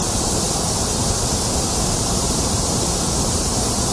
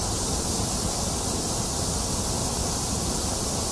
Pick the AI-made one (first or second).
first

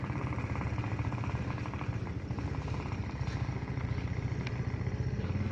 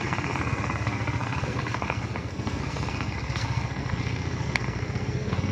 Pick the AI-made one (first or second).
second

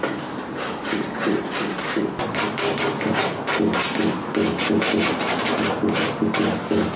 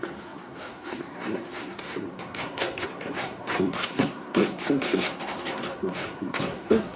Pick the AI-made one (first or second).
second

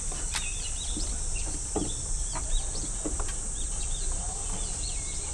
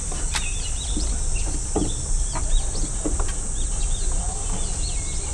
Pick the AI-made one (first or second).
first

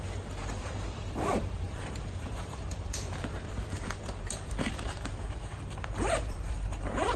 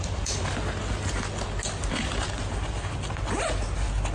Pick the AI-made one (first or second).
first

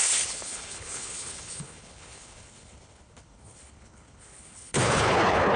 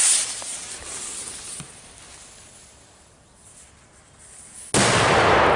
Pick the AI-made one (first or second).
first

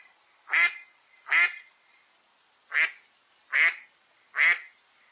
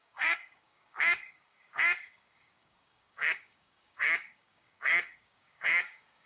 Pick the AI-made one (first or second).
second